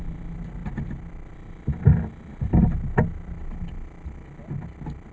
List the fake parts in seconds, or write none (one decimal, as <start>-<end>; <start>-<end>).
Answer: none